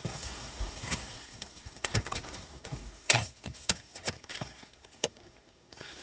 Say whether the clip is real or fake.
fake